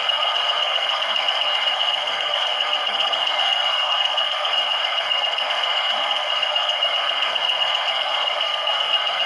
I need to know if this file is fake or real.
fake